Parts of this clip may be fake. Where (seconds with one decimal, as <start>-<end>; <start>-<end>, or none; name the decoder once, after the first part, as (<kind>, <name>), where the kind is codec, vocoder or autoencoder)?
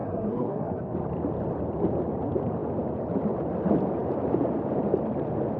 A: 0.0-0.8 (codec, SNAC)